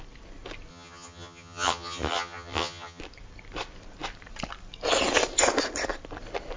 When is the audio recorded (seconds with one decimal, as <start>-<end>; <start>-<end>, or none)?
0.0-0.7; 3.0-6.6